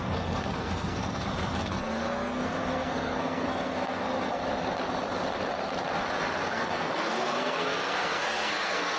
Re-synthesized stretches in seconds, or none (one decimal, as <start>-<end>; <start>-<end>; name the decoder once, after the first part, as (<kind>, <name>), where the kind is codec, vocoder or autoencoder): 0.0-4.4 (codec, SNAC); 6.5-9.0